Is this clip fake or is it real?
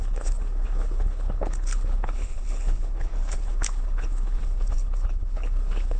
fake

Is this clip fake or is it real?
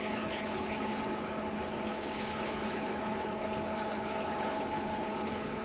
fake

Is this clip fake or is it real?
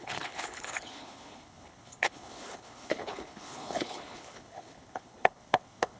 fake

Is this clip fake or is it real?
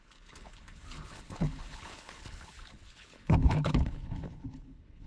fake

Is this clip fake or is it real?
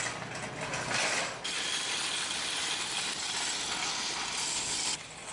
real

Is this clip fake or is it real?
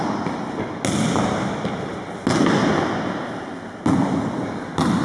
real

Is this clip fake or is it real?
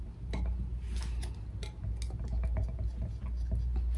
real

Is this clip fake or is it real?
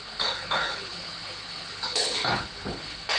fake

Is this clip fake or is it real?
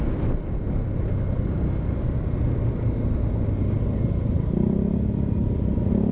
real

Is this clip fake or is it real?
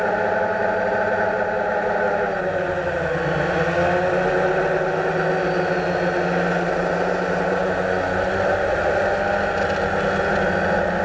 real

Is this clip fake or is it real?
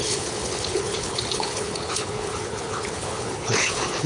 fake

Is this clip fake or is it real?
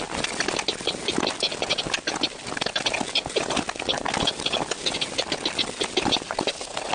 real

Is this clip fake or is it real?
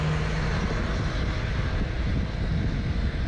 real